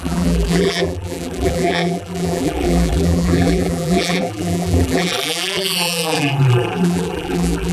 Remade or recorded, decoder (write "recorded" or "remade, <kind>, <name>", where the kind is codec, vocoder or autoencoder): remade, vocoder, BigVGAN v2